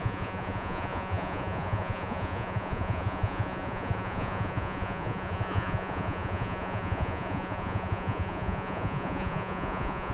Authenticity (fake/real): fake